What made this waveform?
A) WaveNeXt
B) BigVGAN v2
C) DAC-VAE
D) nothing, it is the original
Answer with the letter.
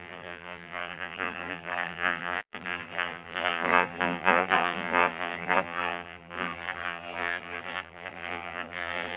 B